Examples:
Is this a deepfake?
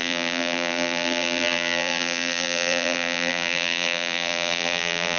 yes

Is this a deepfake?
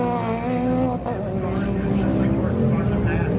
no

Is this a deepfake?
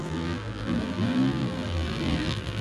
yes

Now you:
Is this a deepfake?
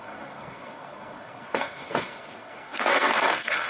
yes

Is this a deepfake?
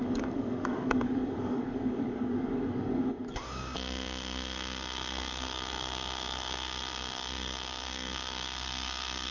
yes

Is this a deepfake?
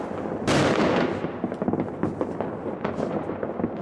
no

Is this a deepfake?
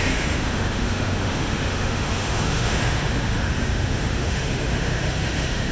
yes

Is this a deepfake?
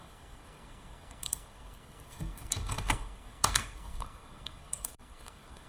yes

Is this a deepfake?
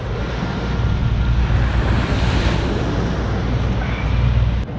no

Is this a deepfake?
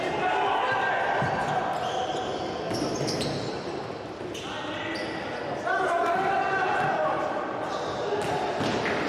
no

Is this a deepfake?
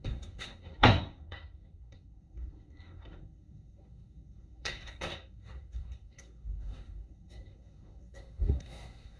yes